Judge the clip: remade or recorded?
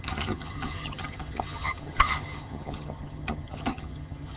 remade